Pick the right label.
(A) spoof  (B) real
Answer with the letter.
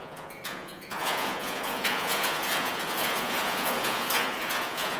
A